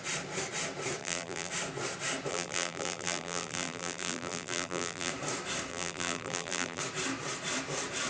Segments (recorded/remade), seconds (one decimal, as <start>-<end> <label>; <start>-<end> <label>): 0.0-1.0 recorded; 1.0-1.5 remade; 1.5-2.3 recorded; 2.3-5.1 remade; 5.1-5.7 recorded; 5.7-6.8 remade; 6.8-8.1 recorded